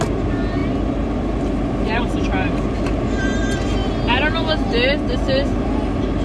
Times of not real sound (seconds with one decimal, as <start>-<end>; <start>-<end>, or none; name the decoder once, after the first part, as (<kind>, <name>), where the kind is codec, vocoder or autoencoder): none